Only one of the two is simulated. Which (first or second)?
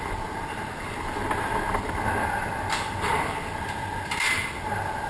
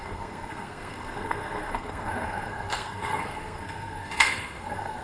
second